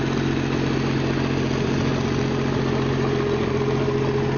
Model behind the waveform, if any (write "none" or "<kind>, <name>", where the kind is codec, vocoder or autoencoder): none